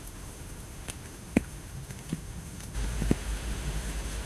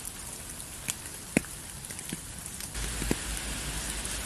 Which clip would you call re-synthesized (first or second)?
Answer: first